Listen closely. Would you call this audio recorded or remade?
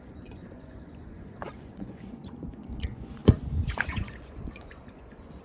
remade